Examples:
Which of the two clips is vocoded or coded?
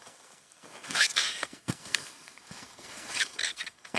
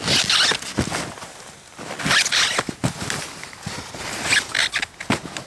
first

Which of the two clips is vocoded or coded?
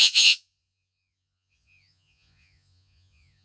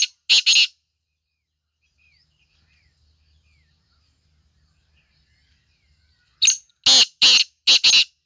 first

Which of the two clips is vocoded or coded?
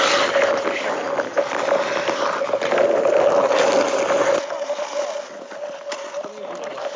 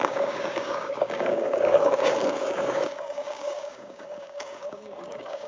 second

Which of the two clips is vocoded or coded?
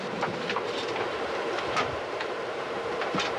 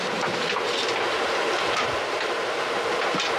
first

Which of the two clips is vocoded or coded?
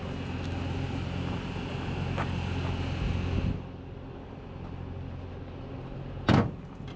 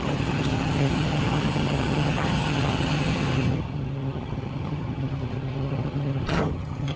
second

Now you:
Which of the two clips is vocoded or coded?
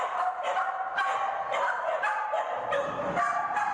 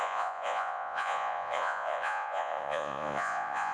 second